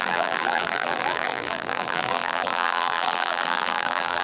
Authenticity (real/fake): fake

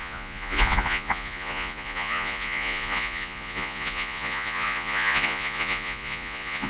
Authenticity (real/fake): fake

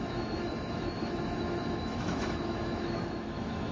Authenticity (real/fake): fake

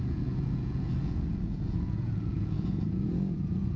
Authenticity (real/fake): fake